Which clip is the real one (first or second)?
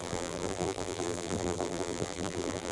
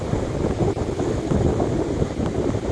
second